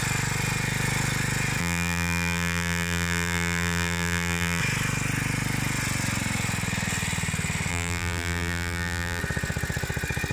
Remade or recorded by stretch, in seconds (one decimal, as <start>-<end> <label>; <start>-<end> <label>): 0.0-1.6 recorded; 1.6-4.6 remade; 4.6-7.7 recorded; 7.7-9.2 remade; 9.2-10.3 recorded